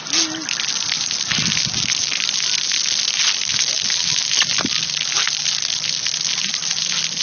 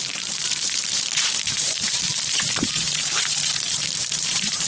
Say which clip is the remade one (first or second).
second